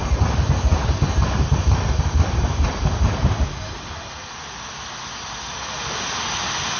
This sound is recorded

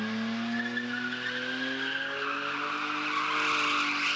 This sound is recorded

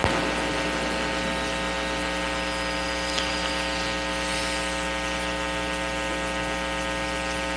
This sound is recorded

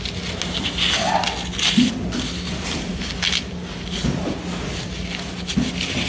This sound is recorded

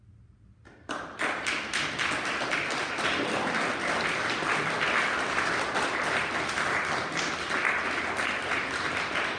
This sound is recorded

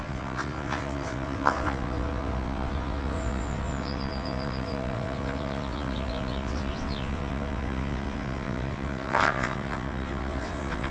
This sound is remade